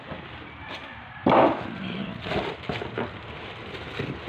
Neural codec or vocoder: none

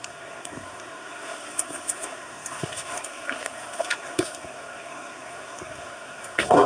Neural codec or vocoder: codec, SNAC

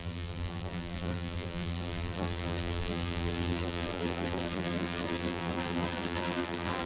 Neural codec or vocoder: vocoder, BigVGAN v2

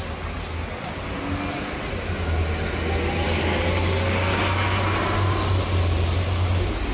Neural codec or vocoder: none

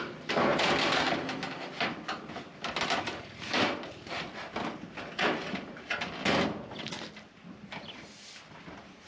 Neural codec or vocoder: vocoder, BigVGAN v2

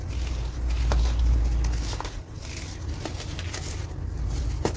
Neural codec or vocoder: none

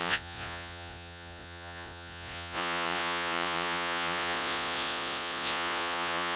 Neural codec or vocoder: vocoder, Vocos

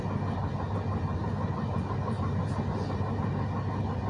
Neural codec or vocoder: none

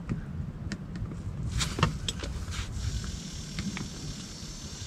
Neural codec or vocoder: none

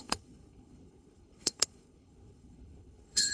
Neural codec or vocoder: codec, HILCodec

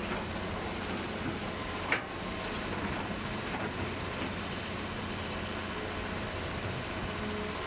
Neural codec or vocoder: none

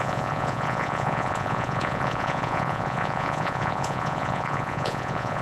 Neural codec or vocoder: vocoder, Vocos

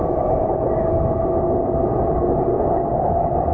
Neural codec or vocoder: none